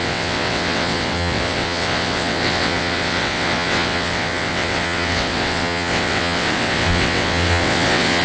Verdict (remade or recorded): remade